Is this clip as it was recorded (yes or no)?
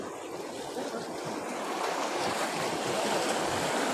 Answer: yes